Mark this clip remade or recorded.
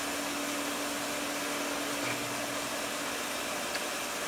recorded